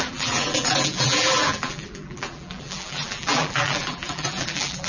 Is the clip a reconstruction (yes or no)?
yes